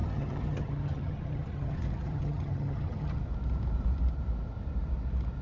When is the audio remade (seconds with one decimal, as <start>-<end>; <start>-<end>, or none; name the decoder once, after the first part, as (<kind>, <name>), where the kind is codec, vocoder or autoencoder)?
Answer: 0.0-3.2 (vocoder, HiFi-GAN)